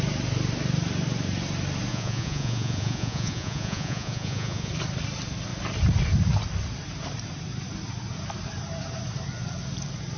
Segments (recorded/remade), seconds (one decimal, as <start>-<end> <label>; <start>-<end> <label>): 0.0-1.9 recorded; 1.9-4.7 remade; 4.7-10.2 recorded